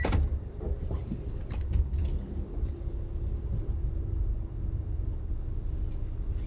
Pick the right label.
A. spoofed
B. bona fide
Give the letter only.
B